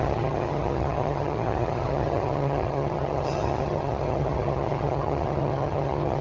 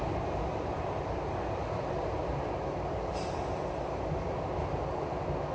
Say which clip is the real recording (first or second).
second